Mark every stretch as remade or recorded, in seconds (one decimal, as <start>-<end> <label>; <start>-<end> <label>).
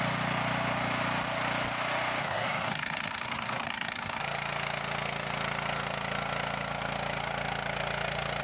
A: 0.0-2.2 recorded; 2.2-4.2 remade; 4.2-8.4 recorded